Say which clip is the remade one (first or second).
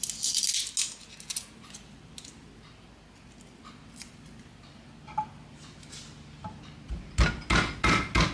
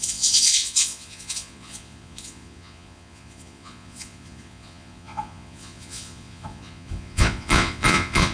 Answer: second